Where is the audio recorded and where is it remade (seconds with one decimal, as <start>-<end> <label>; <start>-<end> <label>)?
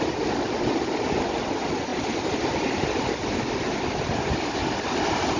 0.0-5.4 recorded